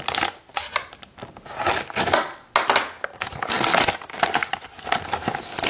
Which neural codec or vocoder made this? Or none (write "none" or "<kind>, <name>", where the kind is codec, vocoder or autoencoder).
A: none